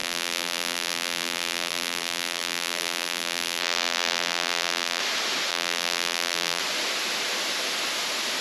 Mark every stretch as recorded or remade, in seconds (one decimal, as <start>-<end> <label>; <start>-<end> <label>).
0.0-5.0 remade; 5.0-5.5 recorded; 5.5-6.6 remade; 6.6-8.4 recorded